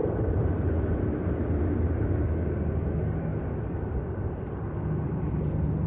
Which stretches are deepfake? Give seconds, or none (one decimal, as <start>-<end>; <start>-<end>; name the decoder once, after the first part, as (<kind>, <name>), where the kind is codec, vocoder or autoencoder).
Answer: 0.0-2.2 (vocoder, BigVGAN v2); 3.3-4.3